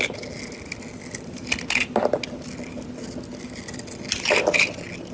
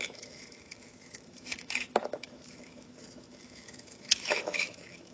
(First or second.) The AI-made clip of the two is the second